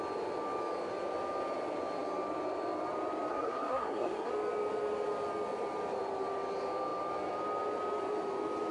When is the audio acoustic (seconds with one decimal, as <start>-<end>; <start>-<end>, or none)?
0.0-3.3; 4.3-8.7